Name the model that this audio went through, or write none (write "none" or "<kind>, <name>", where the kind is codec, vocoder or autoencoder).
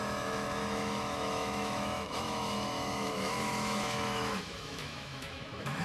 autoencoder, DAC-VAE